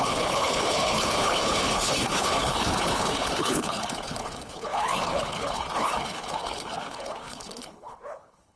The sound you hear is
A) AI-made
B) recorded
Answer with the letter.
A